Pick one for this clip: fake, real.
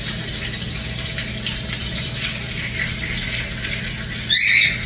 real